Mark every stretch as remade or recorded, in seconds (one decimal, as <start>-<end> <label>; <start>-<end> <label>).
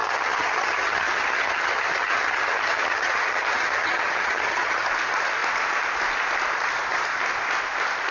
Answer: 0.0-4.9 remade; 4.9-8.1 recorded